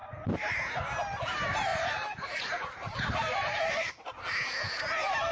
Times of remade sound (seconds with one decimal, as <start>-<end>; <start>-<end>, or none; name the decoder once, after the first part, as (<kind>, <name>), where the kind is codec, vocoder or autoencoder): 0.0-0.6 (vocoder, BigVGAN v2); 1.7-3.9